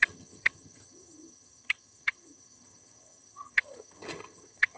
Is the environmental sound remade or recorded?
remade